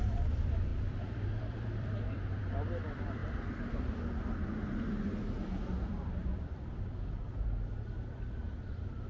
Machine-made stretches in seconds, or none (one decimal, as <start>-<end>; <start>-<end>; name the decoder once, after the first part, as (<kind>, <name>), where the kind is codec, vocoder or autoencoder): 0.0-3.2 (vocoder, BigVGAN v2); 5.9-9.1